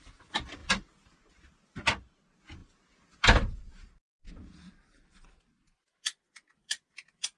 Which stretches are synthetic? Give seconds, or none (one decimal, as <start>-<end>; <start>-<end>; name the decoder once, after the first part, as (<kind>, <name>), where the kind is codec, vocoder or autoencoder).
none